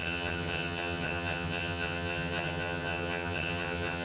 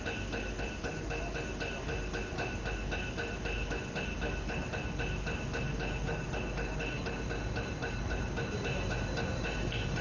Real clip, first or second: second